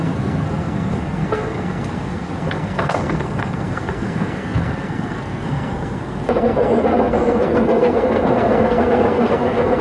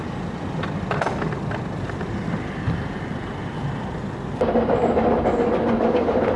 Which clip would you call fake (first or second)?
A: first